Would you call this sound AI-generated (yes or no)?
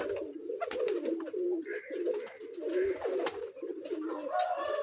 no